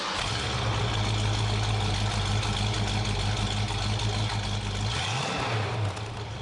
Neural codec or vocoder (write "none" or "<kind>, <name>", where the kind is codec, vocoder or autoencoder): none